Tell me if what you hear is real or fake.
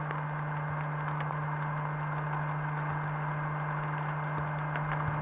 real